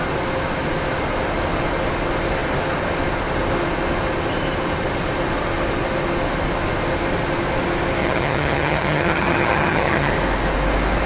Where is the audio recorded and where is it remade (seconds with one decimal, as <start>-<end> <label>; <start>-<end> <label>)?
0.0-8.0 recorded; 8.0-10.1 remade; 10.1-11.1 recorded